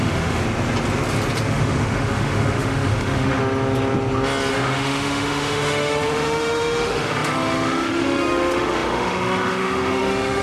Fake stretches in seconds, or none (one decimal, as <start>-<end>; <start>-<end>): 0.0-0.4; 1.5-3.4; 4.5-10.4